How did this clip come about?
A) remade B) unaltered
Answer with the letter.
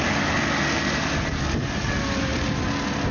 B